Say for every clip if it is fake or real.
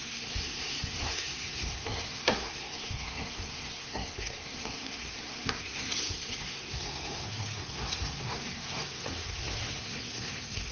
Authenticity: fake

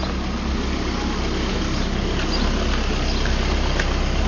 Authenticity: real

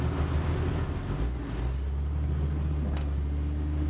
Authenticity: real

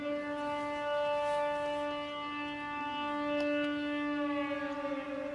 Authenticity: real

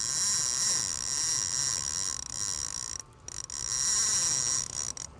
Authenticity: real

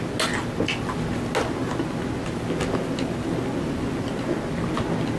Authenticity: real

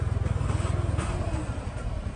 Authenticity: real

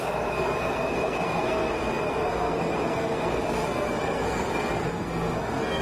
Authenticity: fake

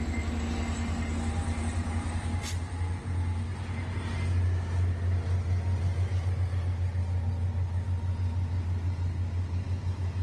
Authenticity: real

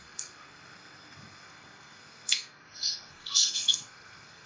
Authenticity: fake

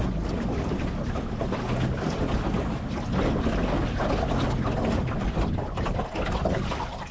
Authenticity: real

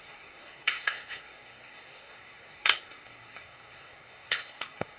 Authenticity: fake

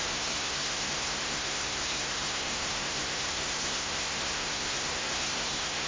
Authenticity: fake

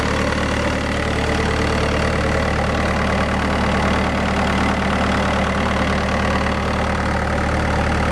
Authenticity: real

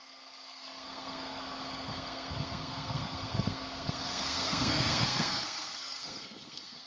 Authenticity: fake